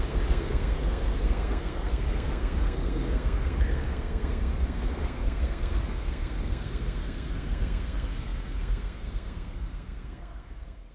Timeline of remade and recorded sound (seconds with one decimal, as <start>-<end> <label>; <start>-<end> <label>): 0.0-10.9 remade